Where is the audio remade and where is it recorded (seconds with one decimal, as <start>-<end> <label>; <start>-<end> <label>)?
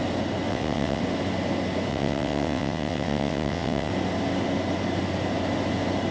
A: 0.0-0.5 recorded; 0.5-1.0 remade; 1.0-1.9 recorded; 1.9-3.9 remade; 3.9-6.1 recorded